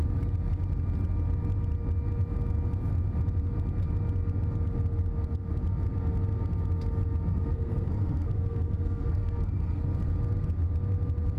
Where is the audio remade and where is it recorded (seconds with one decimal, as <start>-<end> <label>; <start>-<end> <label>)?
0.0-7.3 recorded; 7.3-9.8 remade; 9.8-11.4 recorded